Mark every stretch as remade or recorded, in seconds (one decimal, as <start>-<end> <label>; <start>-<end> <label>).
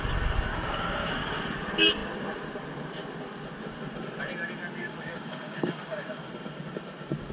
0.0-0.5 recorded; 0.5-1.4 remade; 1.4-4.8 recorded; 4.8-6.3 remade; 6.3-7.3 recorded